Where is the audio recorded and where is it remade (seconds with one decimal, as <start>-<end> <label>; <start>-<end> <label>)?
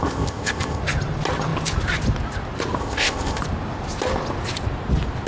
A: 0.0-0.8 remade; 0.8-2.8 recorded; 2.8-3.4 remade; 3.4-5.3 recorded